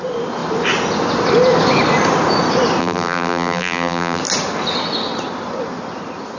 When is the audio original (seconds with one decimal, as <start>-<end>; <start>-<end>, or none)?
0.0-2.8; 4.2-6.4